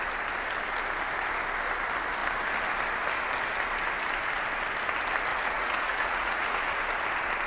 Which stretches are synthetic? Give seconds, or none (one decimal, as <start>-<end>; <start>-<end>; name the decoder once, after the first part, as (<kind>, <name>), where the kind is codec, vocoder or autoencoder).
5.3-6.8 (vocoder, Vocos)

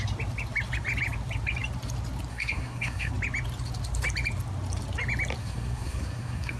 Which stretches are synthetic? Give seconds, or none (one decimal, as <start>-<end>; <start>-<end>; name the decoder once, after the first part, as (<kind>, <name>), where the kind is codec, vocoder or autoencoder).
2.3-3.1 (codec, SNAC); 5.4-6.6

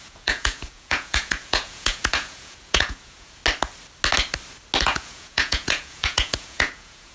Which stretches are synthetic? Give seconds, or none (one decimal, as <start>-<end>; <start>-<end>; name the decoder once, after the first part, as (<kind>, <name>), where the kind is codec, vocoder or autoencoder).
0.0-3.4 (vocoder, Vocos); 4.8-7.1

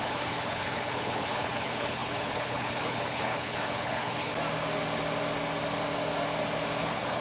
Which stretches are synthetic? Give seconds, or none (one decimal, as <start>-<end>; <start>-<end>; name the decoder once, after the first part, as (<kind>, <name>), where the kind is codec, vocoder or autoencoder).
0.0-4.3 (codec, HILCodec); 6.8-7.2

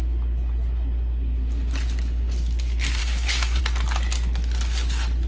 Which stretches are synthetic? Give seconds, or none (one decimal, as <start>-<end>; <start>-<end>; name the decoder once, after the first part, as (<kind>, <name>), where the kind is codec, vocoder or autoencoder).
3.0-3.6 (codec, SNAC)

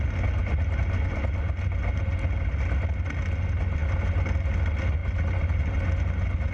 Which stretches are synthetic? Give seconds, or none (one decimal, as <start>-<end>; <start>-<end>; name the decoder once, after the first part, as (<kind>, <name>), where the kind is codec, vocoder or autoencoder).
none

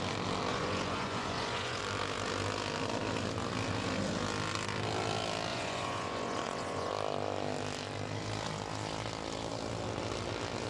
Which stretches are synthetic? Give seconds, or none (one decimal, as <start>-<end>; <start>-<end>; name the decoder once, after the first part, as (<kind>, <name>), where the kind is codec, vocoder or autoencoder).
0.5-1.8 (vocoder, Vocos); 5.5-6.9

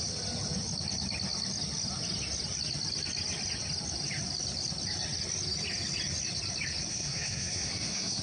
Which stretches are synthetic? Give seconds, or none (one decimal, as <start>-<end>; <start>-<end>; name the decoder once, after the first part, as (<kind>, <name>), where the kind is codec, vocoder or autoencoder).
6.9-8.2 (codec, SNAC)